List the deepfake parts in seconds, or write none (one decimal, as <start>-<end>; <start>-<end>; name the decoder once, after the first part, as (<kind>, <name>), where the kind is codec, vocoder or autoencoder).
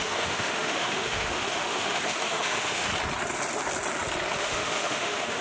0.0-2.9 (autoencoder, DAC-VAE); 4.4-5.4